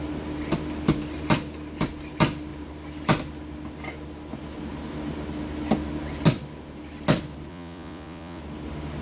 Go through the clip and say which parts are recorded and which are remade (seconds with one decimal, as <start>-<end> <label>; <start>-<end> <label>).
0.0-7.5 recorded; 7.5-8.4 remade; 8.4-9.0 recorded